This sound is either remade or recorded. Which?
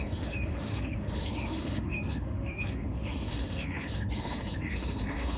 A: remade